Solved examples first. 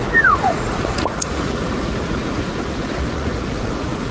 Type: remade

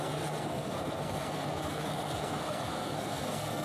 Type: remade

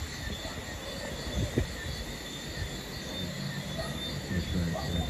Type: recorded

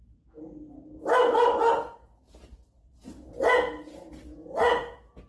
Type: recorded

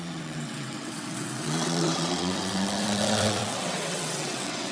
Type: remade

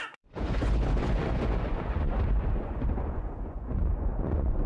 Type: remade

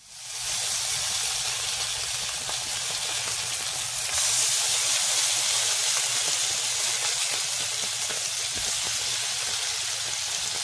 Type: recorded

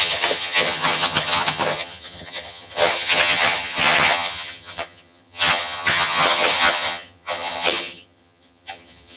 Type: remade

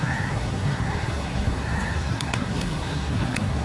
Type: remade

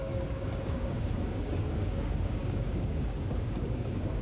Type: remade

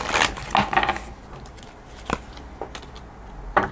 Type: recorded